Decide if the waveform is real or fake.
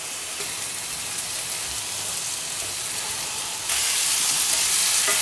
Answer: real